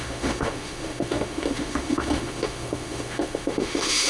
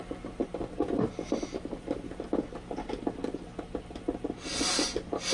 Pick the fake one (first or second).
first